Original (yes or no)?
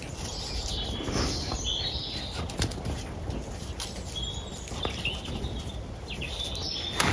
yes